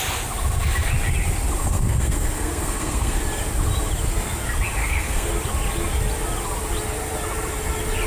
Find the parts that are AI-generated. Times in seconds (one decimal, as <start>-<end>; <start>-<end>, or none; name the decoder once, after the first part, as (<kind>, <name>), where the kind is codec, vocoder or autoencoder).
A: 1.6-3.2 (codec, SNAC); 4.8-5.3